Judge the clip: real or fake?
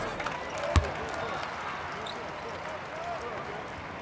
real